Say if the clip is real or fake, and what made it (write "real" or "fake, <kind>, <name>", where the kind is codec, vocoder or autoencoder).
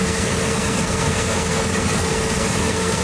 fake, codec, SNAC